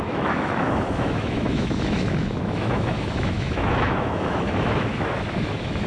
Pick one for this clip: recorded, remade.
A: remade